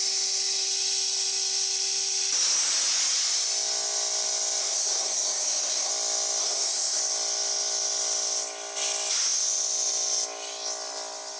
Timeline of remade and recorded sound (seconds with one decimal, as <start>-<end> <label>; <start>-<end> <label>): 0.0-4.6 recorded; 4.6-5.9 remade; 5.9-6.4 recorded; 6.4-7.0 remade; 7.0-11.4 recorded

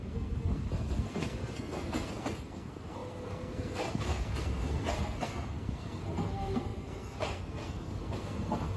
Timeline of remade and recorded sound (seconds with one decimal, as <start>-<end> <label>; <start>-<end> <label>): 0.0-8.8 remade

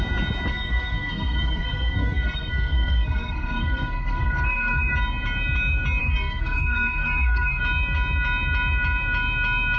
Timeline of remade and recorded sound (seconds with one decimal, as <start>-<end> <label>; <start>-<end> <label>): 0.0-0.5 recorded; 0.5-4.9 remade; 4.9-6.0 recorded; 6.0-7.6 remade; 7.6-9.8 recorded

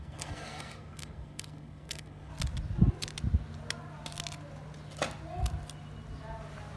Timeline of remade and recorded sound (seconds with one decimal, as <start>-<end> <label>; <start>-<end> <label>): 0.0-2.3 remade; 2.3-6.8 recorded

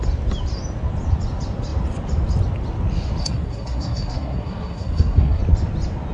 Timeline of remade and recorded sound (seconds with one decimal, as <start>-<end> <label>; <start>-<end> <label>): 0.0-3.2 recorded; 3.2-5.4 remade; 5.4-6.1 recorded